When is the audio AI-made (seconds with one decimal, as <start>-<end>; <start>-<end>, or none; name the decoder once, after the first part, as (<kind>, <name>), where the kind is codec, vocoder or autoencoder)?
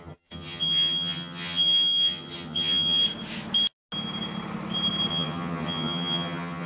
0.0-3.0 (vocoder, HiFi-GAN); 5.1-6.7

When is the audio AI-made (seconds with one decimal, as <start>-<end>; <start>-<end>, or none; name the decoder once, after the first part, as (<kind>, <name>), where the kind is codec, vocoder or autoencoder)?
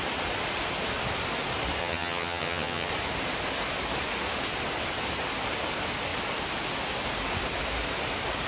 1.8-2.9 (vocoder, HiFi-GAN)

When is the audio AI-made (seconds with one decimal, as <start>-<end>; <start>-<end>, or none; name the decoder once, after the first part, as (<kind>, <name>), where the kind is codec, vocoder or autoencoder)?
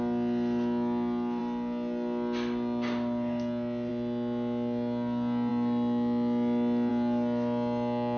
none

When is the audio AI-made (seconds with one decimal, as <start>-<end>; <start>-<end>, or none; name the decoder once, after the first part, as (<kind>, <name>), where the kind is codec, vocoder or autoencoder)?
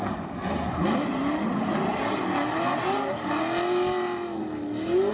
none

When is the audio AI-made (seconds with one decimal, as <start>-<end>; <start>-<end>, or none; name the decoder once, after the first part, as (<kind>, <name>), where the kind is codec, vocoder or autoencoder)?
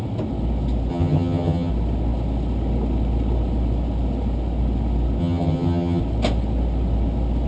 0.9-1.7 (vocoder, HiFi-GAN); 5.2-6.0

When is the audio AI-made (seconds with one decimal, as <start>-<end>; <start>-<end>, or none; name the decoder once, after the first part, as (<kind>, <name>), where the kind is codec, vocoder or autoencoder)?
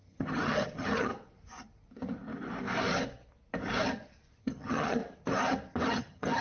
0.0-1.1 (vocoder, HiFi-GAN); 4.4-5.0; 5.9-6.4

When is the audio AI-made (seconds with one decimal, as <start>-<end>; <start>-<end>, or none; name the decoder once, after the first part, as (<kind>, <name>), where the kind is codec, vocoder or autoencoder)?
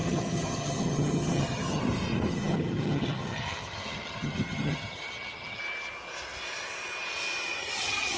0.0-1.8 (vocoder, HiFi-GAN); 2.3-5.6; 7.6-8.2